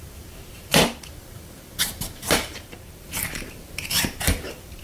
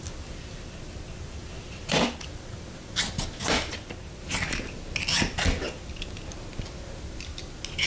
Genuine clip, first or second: second